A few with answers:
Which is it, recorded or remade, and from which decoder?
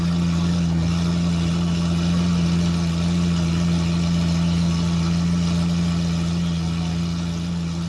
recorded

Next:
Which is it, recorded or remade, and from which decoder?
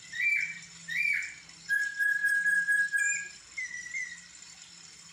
remade, vocoder, BigVGAN v2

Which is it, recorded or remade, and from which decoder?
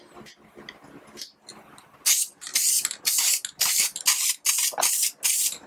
recorded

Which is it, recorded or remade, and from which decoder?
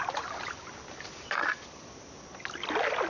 recorded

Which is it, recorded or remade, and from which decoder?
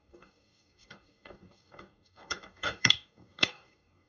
remade, codec, DAC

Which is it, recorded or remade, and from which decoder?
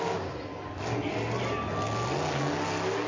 recorded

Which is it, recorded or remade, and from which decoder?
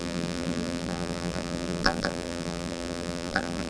remade, vocoder, BigVGAN v2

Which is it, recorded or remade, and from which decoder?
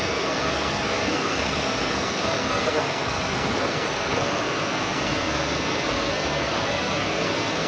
remade, codec, SNAC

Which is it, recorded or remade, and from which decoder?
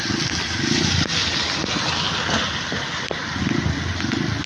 recorded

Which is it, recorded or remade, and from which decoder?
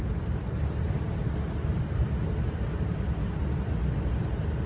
recorded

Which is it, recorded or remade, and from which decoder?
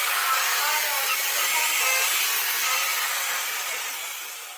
recorded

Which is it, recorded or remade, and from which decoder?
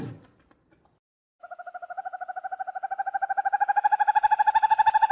recorded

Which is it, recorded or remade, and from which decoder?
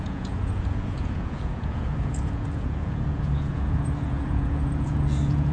remade, vocoder, Vocos